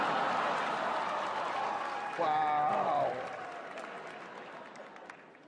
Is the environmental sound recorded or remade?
recorded